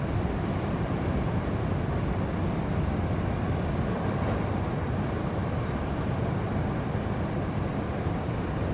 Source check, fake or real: real